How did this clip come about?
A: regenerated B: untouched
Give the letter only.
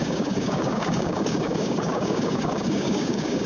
A